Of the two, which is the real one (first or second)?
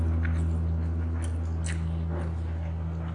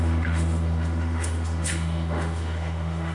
first